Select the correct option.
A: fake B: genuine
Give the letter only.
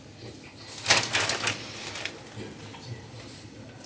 B